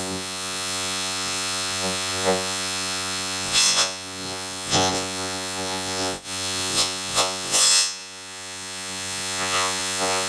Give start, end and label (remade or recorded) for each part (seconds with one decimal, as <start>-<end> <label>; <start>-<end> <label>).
0.0-10.3 remade